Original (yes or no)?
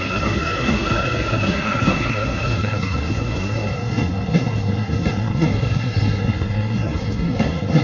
no